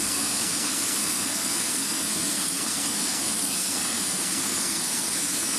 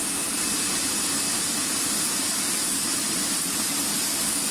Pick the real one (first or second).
second